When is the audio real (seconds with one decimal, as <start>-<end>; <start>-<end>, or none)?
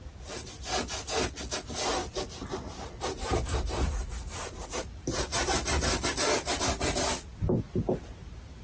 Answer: 0.0-2.1; 6.1-8.6